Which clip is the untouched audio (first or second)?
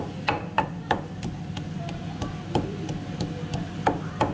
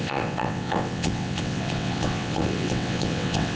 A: first